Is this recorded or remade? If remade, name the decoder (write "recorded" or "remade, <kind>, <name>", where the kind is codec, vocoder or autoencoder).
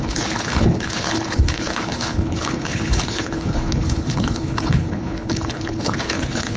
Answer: remade, codec, HILCodec